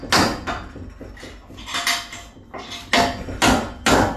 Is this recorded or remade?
recorded